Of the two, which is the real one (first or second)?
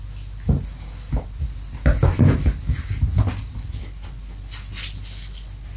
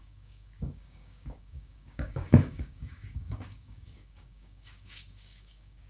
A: first